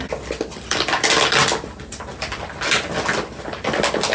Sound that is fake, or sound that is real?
real